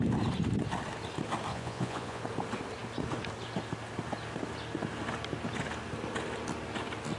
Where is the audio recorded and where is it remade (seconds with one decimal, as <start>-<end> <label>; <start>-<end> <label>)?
0.0-1.5 recorded; 1.5-2.2 remade; 2.2-7.2 recorded